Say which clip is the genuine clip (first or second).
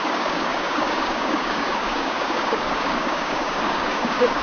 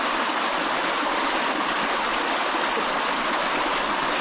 second